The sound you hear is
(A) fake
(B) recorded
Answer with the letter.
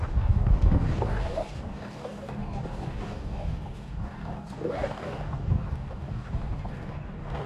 A